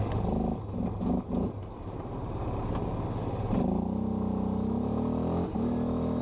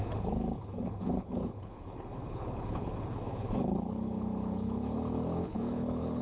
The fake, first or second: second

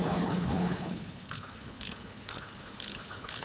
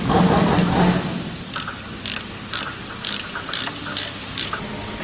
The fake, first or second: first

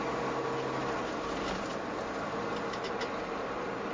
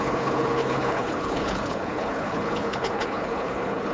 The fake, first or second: second